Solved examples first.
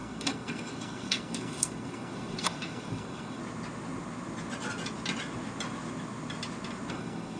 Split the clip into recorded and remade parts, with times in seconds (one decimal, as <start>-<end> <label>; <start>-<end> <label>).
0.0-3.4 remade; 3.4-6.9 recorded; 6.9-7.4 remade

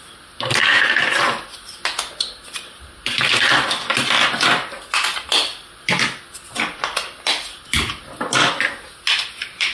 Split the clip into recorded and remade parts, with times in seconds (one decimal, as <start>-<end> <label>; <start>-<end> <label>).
0.0-9.7 recorded

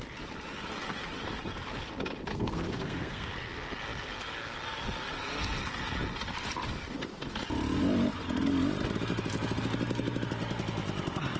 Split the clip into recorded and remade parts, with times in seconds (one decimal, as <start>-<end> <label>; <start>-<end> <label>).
0.0-2.3 recorded; 2.3-3.3 remade; 3.3-11.4 recorded